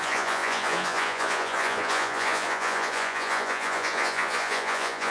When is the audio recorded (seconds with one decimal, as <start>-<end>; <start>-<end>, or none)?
none